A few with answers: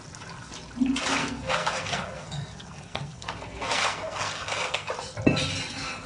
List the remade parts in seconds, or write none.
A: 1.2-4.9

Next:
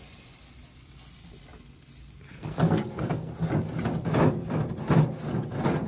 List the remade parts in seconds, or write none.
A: 2.3-3.3

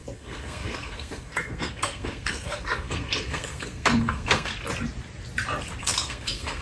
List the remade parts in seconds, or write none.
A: 0.0-4.5; 5.8-6.6

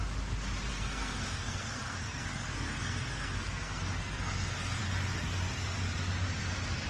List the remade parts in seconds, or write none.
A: 0.7-4.8

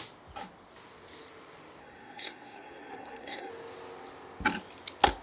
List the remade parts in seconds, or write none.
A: 1.8-3.5

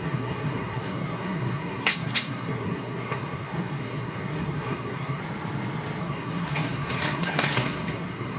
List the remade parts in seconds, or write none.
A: 0.0-5.2; 6.0-8.4

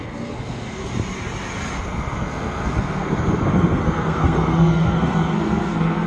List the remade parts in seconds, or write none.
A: 0.0-0.8; 1.8-6.1